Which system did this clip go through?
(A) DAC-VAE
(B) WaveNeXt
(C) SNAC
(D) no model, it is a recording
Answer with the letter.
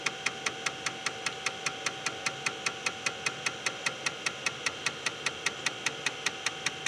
D